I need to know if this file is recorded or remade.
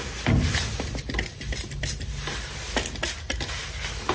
recorded